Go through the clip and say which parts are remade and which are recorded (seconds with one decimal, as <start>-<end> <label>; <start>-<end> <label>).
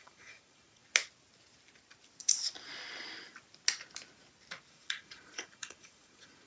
0.0-0.8 remade; 0.8-4.7 recorded; 4.7-6.5 remade